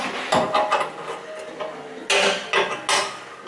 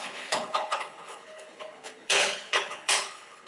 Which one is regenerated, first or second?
second